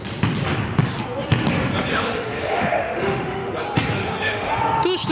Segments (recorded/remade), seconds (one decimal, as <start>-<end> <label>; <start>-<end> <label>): 0.0-1.9 recorded; 1.9-3.5 remade; 3.5-4.0 recorded; 4.0-4.6 remade; 4.6-5.1 recorded